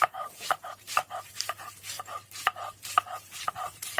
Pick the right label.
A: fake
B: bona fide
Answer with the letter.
A